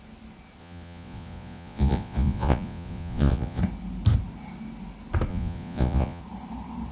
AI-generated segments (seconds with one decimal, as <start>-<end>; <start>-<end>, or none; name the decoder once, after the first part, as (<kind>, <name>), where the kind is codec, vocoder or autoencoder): 0.6-3.6 (vocoder, Vocos); 5.3-6.2